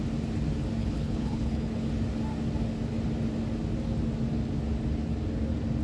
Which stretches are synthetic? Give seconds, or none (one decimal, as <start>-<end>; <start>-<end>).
0.8-1.9